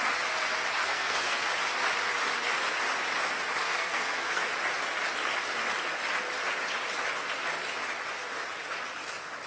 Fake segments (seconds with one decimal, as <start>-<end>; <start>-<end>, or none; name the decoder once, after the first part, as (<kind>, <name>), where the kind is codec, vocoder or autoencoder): 0.8-1.5 (codec, SNAC); 3.6-4.5